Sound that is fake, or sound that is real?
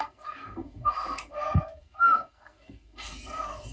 fake